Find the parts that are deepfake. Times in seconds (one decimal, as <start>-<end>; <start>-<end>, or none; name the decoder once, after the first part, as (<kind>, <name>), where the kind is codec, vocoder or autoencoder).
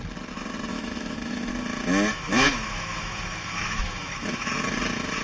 0.7-1.5 (autoencoder, DAC-VAE); 2.1-4.5